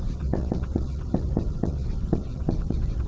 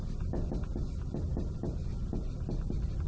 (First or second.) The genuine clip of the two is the second